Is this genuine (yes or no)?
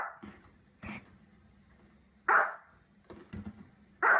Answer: yes